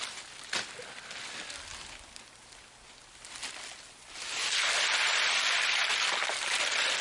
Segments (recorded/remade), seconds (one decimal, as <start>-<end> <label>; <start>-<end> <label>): 0.0-7.0 remade